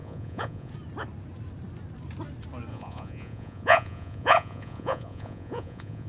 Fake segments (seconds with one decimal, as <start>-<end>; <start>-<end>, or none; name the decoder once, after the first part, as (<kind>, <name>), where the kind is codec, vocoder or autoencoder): 0.0-0.7 (vocoder, Vocos); 2.7-6.1